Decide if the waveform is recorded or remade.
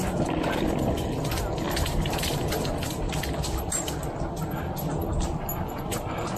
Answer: recorded